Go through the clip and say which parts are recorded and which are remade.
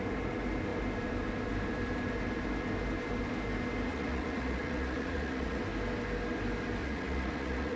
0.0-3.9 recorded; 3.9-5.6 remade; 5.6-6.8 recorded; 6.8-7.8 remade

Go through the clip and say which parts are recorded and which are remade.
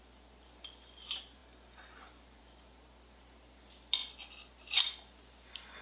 0.0-1.4 remade; 1.4-2.4 recorded; 2.4-5.8 remade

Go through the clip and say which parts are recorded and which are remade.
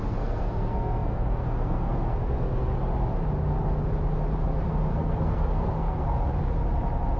0.0-2.7 remade; 2.7-4.7 recorded; 4.7-6.1 remade; 6.1-7.2 recorded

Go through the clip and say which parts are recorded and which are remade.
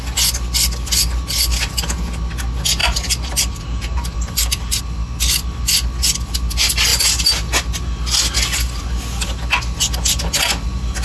0.0-2.8 recorded; 2.8-4.8 remade; 4.8-11.0 recorded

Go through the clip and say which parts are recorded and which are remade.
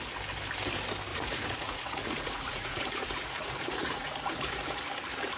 0.0-1.1 recorded; 1.1-4.1 remade; 4.1-5.4 recorded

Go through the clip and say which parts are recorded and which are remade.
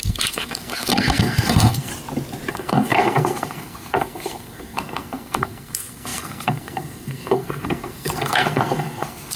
0.0-1.9 remade; 1.9-2.5 recorded; 2.5-9.4 remade